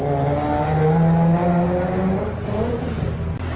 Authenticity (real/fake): real